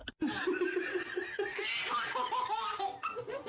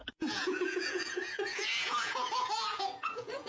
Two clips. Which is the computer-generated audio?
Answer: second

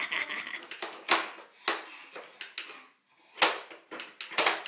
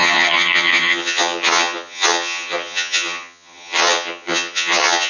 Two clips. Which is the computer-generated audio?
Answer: second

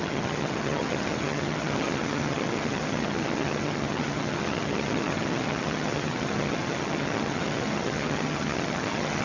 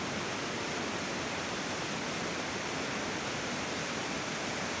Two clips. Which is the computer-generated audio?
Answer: first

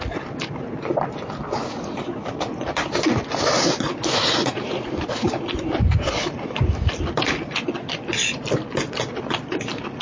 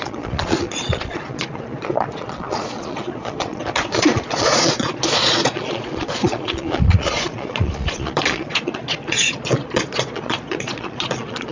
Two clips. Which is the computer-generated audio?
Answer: second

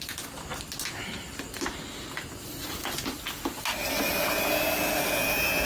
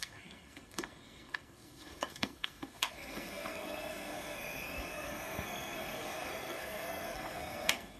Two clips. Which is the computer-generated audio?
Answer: second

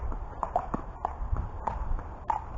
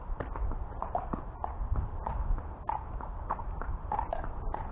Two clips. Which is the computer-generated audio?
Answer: first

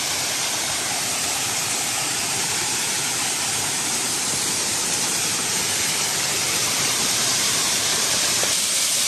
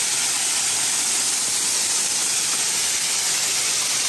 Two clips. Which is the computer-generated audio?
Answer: first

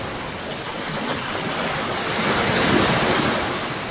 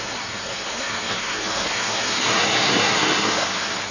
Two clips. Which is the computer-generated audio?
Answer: second